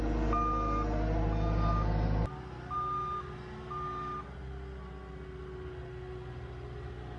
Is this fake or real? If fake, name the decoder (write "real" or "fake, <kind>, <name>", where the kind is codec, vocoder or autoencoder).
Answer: real